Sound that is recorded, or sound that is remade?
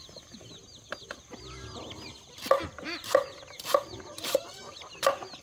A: recorded